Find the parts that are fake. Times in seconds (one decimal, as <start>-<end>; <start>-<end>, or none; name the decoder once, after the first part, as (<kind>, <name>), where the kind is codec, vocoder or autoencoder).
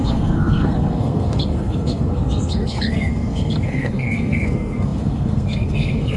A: 0.0-6.2 (codec, SNAC)